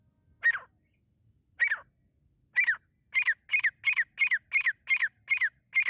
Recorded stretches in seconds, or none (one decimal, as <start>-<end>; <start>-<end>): 0.0-5.9